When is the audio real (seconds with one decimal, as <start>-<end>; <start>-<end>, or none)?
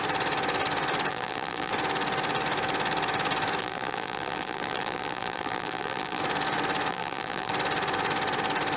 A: 0.0-1.1; 1.7-3.6; 6.2-6.9; 7.5-8.8